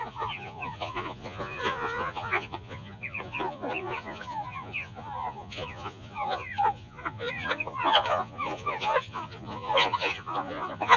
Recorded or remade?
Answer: remade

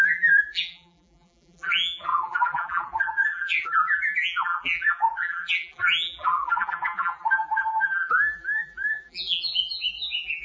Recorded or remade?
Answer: remade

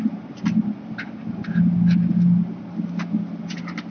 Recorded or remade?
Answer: recorded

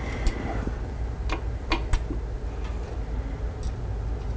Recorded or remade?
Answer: recorded